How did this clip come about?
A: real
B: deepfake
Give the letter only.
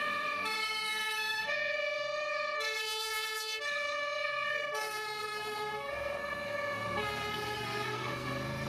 B